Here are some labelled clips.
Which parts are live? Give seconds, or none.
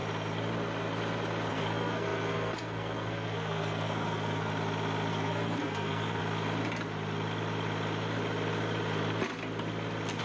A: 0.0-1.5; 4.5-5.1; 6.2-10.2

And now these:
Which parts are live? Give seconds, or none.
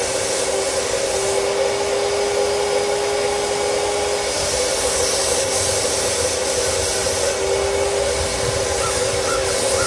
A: 0.0-9.9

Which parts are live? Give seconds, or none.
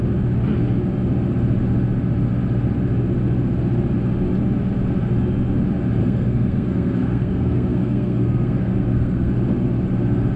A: 0.0-6.0; 9.3-10.4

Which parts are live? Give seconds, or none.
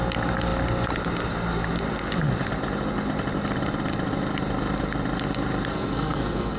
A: 0.0-5.7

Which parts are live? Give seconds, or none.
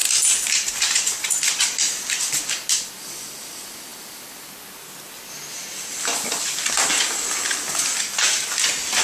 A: 0.0-9.0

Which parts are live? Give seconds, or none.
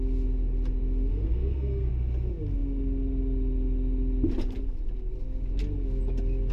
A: 0.0-1.1; 1.9-6.5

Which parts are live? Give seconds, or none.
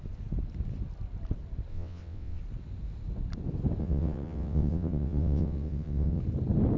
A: 0.0-1.7; 2.4-3.8; 6.2-6.8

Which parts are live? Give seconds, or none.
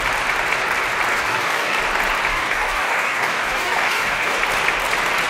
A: 0.0-1.1; 1.8-2.3; 4.4-5.3